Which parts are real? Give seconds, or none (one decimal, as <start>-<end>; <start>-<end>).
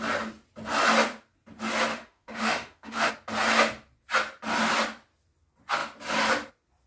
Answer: 0.0-1.9; 3.1-6.9